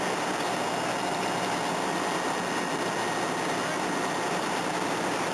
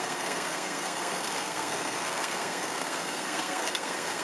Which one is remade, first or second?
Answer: second